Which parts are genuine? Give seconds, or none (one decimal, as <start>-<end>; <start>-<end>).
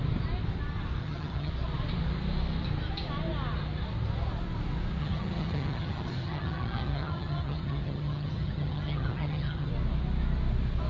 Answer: 0.0-1.0; 1.5-5.0; 9.7-10.9